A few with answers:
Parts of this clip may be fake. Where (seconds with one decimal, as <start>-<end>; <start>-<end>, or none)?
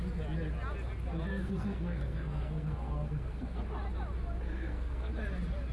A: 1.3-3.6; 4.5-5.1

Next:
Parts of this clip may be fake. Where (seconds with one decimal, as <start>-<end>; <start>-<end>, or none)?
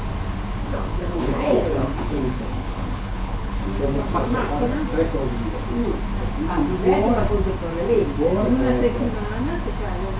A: 0.9-3.6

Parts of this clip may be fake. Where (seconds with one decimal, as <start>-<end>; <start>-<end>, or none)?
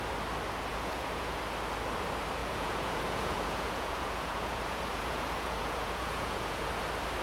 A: 0.7-1.4; 2.4-6.7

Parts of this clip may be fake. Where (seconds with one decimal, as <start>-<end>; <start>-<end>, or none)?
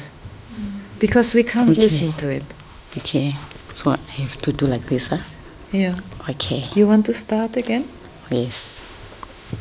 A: 0.0-3.7; 8.5-9.6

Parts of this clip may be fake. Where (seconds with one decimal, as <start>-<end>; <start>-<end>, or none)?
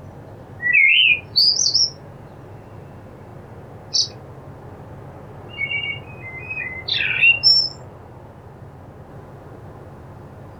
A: 0.9-2.2